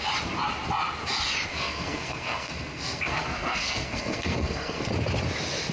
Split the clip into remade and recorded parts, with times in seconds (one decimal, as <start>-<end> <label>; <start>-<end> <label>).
0.0-1.5 recorded; 1.5-4.9 remade; 4.9-5.7 recorded